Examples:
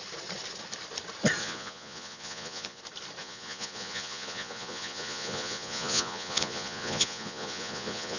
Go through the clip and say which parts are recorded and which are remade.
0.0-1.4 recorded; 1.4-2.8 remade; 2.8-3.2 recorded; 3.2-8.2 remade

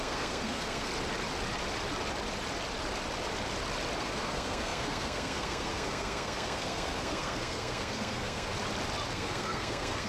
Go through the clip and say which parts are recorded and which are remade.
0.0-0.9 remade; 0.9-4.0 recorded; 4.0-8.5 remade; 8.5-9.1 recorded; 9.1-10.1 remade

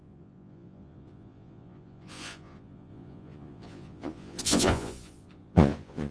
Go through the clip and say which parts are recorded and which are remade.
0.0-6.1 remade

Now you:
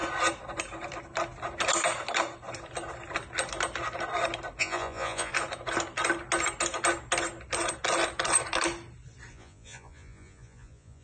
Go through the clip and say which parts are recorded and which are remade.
0.0-4.6 recorded; 4.6-5.3 remade; 5.3-9.3 recorded; 9.3-11.0 remade

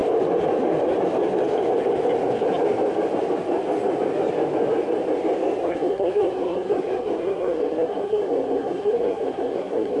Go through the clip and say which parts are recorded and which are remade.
0.0-5.6 recorded; 5.6-10.0 remade

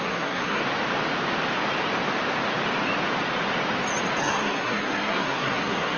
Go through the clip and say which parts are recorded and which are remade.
0.0-0.6 remade; 0.6-4.2 recorded; 4.2-6.0 remade

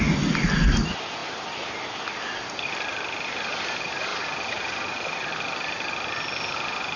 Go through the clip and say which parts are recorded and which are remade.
0.0-7.0 recorded